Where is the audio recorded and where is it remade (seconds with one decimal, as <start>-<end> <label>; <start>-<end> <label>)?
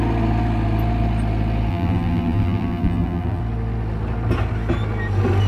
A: 0.0-1.7 recorded; 1.7-3.4 remade; 3.4-5.5 recorded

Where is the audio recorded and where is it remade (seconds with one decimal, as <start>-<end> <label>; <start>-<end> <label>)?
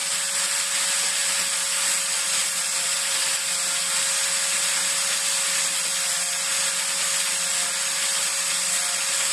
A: 0.0-2.4 recorded; 2.4-3.3 remade; 3.3-9.3 recorded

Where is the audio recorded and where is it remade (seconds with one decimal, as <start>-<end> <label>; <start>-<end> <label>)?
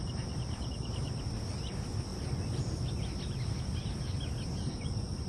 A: 0.0-1.2 remade; 1.2-5.3 recorded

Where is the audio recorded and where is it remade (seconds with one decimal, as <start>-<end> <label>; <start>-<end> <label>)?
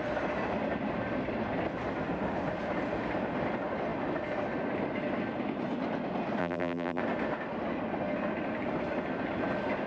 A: 0.0-6.4 recorded; 6.4-7.0 remade; 7.0-9.9 recorded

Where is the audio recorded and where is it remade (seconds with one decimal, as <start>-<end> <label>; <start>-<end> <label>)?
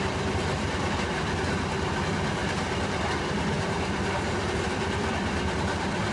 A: 0.0-2.4 recorded; 2.4-6.1 remade